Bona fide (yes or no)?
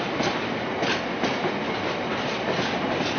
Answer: yes